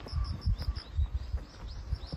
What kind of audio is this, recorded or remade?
recorded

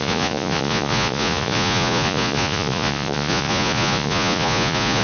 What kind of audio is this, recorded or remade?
remade